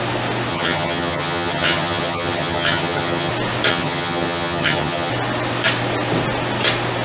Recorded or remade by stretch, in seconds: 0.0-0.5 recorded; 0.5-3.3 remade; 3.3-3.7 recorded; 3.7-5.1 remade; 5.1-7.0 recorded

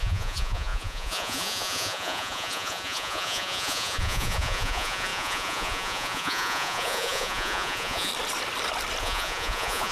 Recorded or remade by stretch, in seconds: 0.0-8.1 remade; 8.1-9.0 recorded; 9.0-9.9 remade

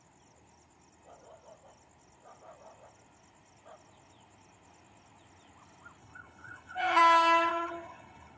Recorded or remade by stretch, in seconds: 0.0-6.0 recorded; 6.0-7.0 remade; 7.0-7.5 recorded; 7.5-8.4 remade

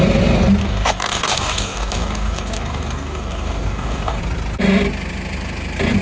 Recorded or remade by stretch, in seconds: 0.0-0.6 recorded; 0.6-4.2 remade; 4.2-6.0 recorded

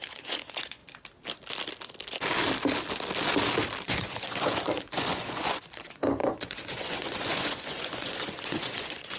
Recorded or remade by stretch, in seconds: 0.0-0.8 remade; 0.8-3.8 recorded; 3.8-9.2 remade

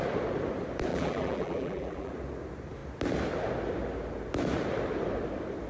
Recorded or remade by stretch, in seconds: 0.0-0.9 recorded; 0.9-2.1 remade; 2.1-5.7 recorded

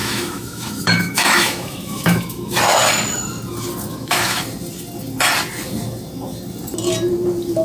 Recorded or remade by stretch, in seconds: 0.0-2.6 remade; 2.6-3.9 recorded; 3.9-4.4 remade; 4.4-7.6 recorded

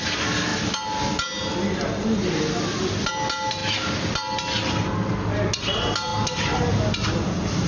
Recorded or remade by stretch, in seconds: 0.0-7.7 recorded